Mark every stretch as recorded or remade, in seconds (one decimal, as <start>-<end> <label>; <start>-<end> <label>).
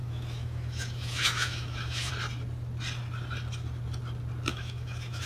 0.0-2.1 remade; 2.1-4.5 recorded; 4.5-5.3 remade